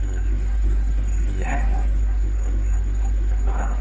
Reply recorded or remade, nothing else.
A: remade